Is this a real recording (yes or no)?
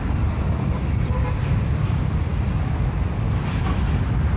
no